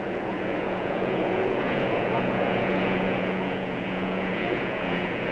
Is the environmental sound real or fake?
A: fake